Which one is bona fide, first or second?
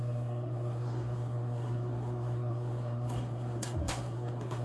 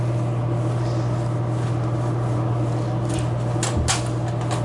second